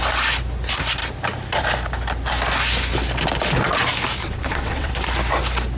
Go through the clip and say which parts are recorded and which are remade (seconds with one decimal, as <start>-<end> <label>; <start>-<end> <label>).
0.0-4.2 recorded; 4.2-4.9 remade; 4.9-5.8 recorded